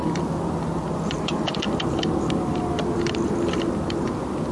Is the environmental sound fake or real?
fake